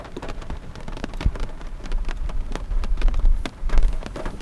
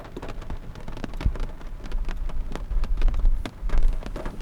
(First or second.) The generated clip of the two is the first